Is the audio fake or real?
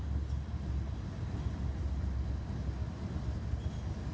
real